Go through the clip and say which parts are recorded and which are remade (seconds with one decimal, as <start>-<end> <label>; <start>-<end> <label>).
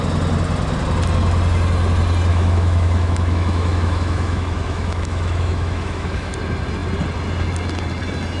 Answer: 0.0-2.3 recorded; 2.3-6.3 remade; 6.3-8.4 recorded